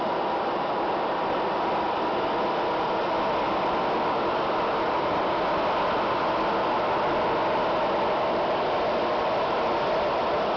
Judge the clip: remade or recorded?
recorded